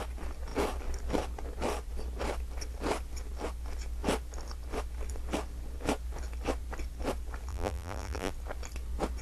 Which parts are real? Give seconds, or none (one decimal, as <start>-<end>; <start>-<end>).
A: 0.0-7.5; 8.3-9.2